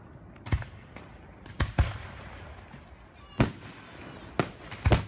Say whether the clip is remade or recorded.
recorded